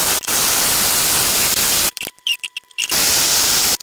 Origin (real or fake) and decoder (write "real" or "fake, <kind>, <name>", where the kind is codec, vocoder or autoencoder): fake, vocoder, BigVGAN v2